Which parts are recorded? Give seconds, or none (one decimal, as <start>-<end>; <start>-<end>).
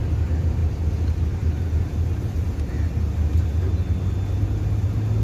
0.0-5.2